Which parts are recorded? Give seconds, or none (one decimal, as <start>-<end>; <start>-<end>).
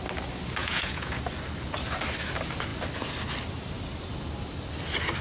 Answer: 0.0-0.6; 1.1-5.2